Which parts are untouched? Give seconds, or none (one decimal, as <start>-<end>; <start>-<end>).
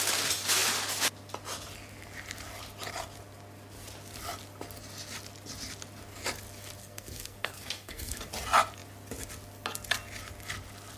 0.0-6.8; 8.3-11.0